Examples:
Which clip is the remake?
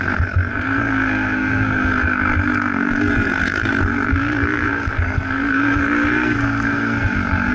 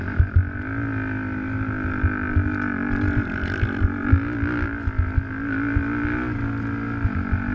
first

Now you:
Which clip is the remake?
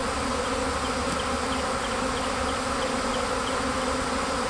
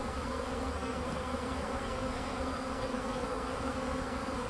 second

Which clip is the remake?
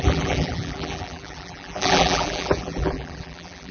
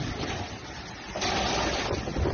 first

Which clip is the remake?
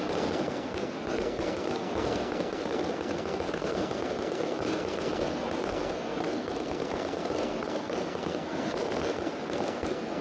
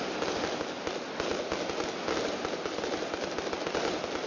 first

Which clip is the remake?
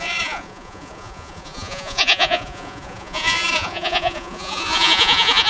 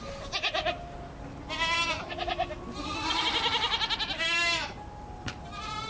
first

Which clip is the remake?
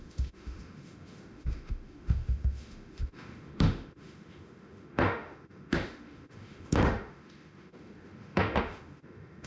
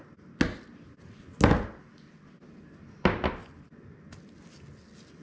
first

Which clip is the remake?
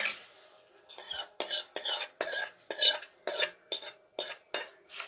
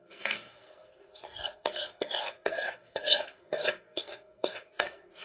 second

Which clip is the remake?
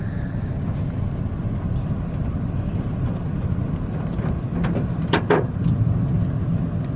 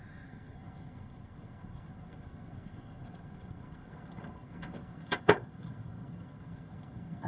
second